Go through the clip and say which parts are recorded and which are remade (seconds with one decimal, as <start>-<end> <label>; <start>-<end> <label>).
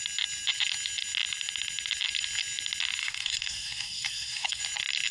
0.0-3.0 recorded; 3.0-4.6 remade; 4.6-5.1 recorded